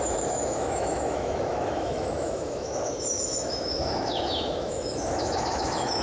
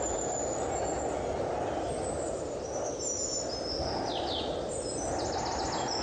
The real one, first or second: second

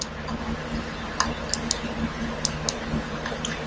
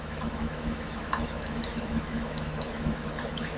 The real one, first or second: first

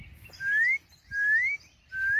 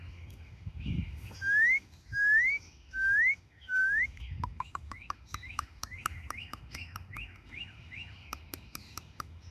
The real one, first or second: first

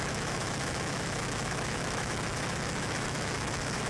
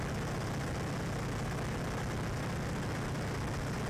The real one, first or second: second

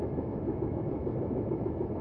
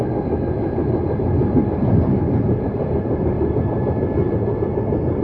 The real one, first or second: second